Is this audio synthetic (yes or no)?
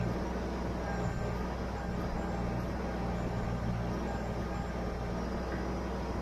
no